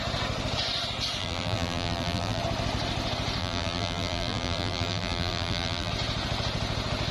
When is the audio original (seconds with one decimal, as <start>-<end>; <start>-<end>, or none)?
0.0-1.2; 2.4-3.4; 5.9-7.1